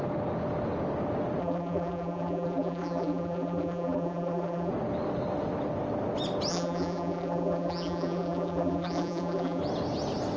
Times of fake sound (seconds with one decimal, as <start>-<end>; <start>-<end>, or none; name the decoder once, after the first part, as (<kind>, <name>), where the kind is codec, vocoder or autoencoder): 1.4-4.7 (vocoder, BigVGAN v2); 6.5-9.6